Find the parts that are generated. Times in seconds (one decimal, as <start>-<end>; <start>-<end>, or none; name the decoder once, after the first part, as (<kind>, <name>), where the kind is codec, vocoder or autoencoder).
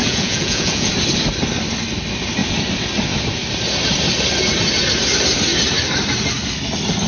0.0-0.9 (vocoder, Vocos)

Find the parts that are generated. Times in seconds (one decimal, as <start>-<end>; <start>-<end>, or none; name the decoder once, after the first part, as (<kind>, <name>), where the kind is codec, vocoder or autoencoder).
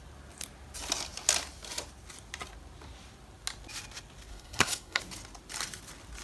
4.3-5.0 (codec, SNAC)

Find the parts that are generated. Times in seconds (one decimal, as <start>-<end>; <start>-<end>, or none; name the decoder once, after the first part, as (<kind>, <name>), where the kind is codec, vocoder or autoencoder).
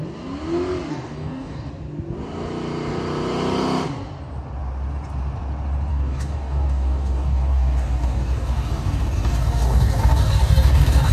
0.9-1.7 (codec, DAC); 5.9-11.1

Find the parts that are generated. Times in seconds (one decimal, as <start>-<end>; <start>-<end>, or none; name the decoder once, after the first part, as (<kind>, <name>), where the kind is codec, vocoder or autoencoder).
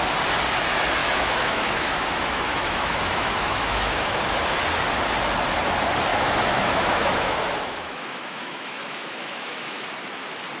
1.0-4.2 (autoencoder, DAC-VAE); 6.1-9.8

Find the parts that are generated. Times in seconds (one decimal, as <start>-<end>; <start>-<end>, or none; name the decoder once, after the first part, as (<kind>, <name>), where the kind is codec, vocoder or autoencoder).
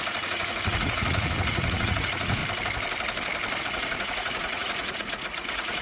0.0-2.4 (vocoder, Vocos); 3.6-5.8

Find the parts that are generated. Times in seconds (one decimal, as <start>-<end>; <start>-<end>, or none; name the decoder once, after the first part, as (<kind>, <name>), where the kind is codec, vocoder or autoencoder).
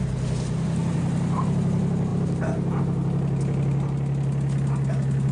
none